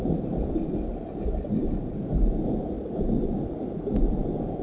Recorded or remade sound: remade